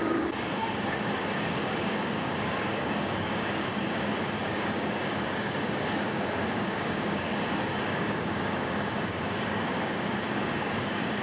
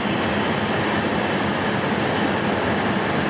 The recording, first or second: second